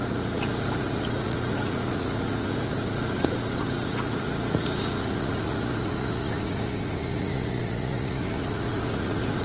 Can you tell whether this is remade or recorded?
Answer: remade